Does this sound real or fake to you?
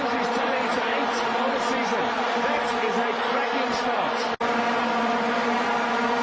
real